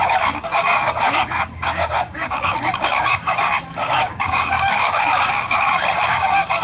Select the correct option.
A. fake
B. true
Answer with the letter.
A